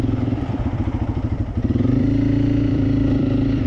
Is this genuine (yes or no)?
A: no